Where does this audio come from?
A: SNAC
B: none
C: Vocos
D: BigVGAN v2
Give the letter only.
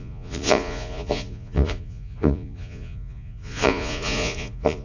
C